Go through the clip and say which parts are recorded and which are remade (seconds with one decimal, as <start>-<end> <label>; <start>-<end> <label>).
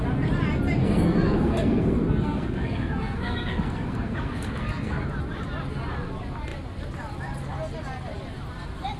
0.0-0.8 recorded; 0.8-5.0 remade; 5.0-9.0 recorded